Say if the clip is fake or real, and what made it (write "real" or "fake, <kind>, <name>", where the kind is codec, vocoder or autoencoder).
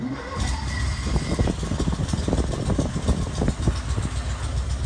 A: real